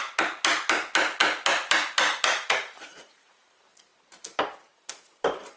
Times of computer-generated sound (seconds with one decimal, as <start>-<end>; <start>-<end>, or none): 2.3-3.4